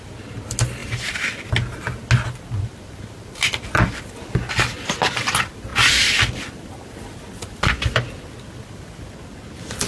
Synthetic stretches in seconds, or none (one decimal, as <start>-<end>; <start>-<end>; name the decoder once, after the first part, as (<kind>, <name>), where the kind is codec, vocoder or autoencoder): none